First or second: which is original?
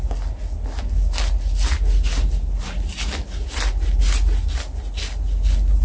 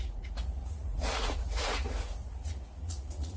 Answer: first